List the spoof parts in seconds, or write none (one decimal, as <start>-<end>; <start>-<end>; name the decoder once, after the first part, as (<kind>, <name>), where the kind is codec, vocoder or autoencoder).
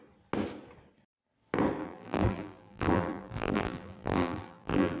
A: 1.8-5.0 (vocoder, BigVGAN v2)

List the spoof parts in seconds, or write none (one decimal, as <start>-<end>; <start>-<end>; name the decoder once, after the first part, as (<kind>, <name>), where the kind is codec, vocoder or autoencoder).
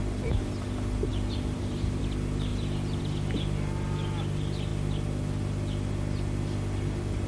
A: 1.1-2.0 (vocoder, BigVGAN v2); 2.5-3.0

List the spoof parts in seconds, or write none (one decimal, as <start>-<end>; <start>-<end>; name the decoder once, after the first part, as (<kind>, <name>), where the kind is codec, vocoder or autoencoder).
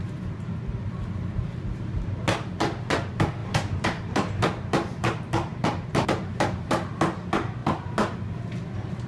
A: 3.4-4.3 (vocoder, BigVGAN v2); 5.5-6.9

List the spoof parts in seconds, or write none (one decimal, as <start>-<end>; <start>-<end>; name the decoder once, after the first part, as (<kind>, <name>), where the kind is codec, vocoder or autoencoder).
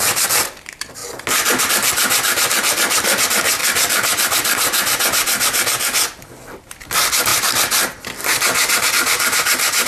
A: 0.0-1.0 (vocoder, BigVGAN v2); 1.6-3.6; 6.6-9.9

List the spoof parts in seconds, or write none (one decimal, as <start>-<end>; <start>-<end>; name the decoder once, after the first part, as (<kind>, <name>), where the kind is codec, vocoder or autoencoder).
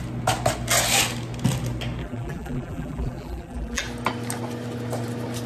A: 2.0-3.8 (vocoder, BigVGAN v2)